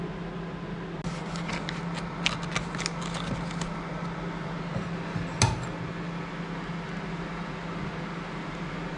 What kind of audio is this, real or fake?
real